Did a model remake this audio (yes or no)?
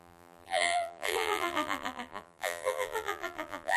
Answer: yes